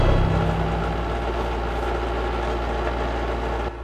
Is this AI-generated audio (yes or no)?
no